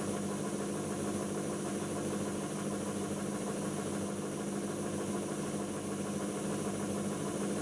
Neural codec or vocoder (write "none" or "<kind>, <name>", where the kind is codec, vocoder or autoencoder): none